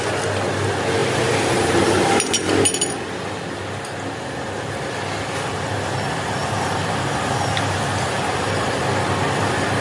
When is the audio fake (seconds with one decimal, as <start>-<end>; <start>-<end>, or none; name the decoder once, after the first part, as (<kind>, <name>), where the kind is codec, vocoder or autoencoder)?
1.0-2.5 (vocoder, BigVGAN v2); 6.4-8.8